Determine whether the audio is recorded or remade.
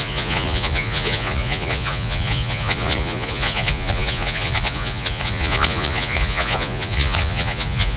remade